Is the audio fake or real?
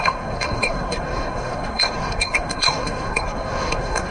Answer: fake